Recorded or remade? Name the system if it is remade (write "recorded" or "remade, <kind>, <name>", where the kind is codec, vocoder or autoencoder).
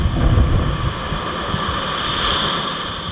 recorded